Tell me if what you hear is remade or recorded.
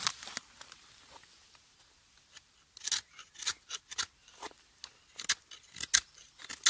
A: recorded